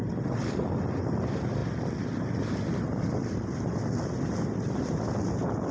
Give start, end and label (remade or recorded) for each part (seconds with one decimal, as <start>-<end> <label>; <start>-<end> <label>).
0.0-5.7 recorded

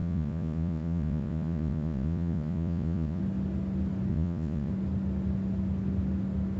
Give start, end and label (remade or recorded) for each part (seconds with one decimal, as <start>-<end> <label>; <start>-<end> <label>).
0.0-3.2 remade; 3.2-4.1 recorded; 4.1-4.7 remade; 4.7-6.6 recorded

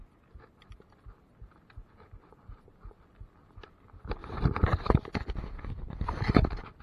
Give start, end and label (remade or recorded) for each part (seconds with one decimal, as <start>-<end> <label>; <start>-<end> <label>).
0.0-4.2 recorded; 4.2-4.9 remade; 4.9-6.8 recorded

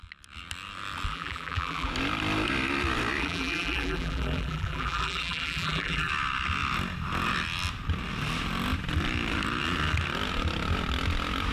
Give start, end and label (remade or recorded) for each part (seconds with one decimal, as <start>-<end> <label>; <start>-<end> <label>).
0.0-1.1 recorded; 1.1-1.9 remade; 1.9-3.2 recorded; 3.2-6.1 remade; 6.1-11.5 recorded

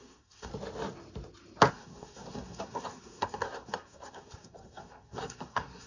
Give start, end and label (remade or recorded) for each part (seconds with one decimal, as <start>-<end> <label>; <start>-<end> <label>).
0.0-0.5 remade; 0.5-1.7 recorded; 1.7-5.9 remade

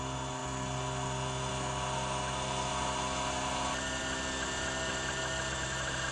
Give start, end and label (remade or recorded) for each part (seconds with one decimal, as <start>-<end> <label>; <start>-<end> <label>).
0.0-6.1 recorded

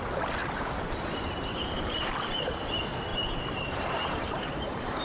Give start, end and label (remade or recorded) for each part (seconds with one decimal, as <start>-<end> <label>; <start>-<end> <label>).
0.0-0.4 recorded; 0.4-2.6 remade; 2.6-3.1 recorded; 3.1-5.0 remade

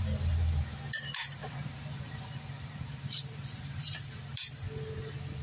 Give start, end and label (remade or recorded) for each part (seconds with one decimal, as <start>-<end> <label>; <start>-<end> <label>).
0.0-1.4 recorded; 1.4-4.6 remade; 4.6-5.4 recorded